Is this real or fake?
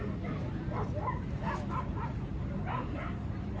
real